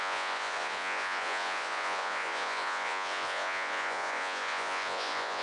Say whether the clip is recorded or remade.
remade